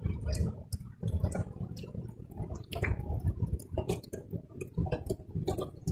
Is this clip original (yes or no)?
no